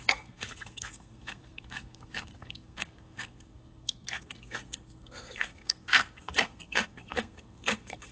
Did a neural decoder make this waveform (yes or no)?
yes